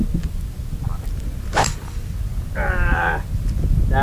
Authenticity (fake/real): real